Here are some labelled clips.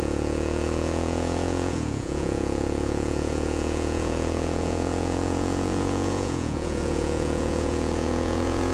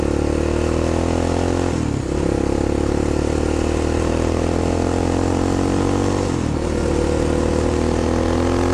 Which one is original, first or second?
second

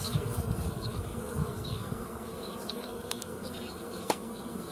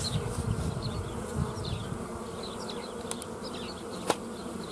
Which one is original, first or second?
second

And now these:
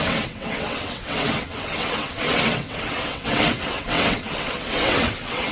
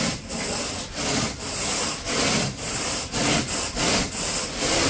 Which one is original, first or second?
second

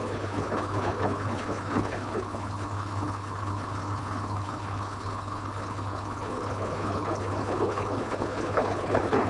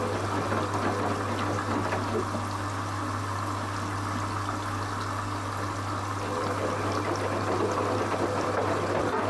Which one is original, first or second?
second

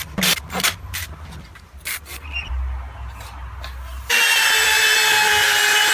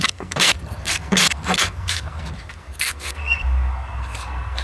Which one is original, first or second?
first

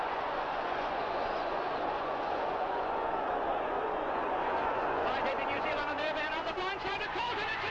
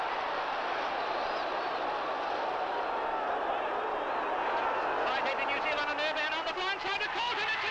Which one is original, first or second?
second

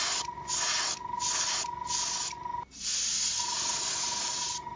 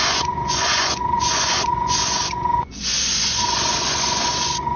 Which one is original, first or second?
first